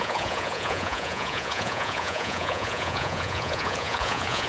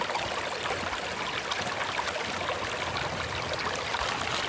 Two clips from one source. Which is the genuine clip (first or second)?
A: second